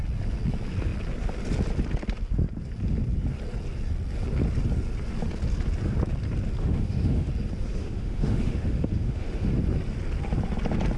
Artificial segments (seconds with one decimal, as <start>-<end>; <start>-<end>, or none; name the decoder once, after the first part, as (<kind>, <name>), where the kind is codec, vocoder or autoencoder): 6.6-7.3 (autoencoder, DAC-VAE); 7.8-9.5

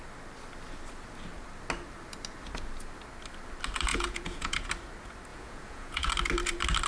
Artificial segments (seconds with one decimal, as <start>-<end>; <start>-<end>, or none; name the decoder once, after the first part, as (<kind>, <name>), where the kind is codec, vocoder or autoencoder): 3.9-4.7 (vocoder, Vocos); 5.3-6.1

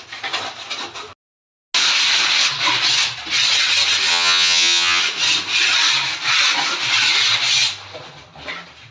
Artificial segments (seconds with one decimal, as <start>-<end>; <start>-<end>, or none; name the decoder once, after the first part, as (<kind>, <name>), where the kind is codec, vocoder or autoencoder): 4.1-5.0 (vocoder, HiFi-GAN)

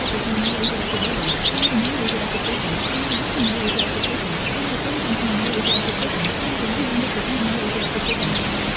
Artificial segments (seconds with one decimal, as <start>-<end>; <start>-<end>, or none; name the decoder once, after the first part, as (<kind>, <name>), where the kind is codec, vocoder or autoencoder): none